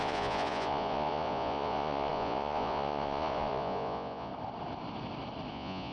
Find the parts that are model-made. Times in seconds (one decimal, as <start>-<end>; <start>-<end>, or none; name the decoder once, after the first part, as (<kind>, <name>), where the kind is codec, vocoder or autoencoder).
0.0-4.3 (vocoder, Vocos); 5.5-5.9